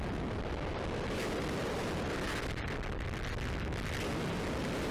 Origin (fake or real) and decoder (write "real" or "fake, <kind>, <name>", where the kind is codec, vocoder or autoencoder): real